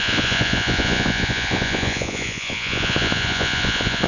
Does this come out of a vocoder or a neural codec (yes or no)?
yes